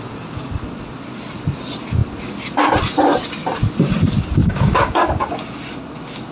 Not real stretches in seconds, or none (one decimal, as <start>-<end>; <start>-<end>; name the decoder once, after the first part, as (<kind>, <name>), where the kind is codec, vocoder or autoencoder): 4.4-5.1 (codec, DAC)